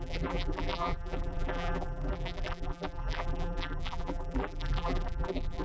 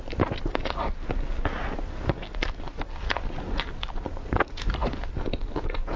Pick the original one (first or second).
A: second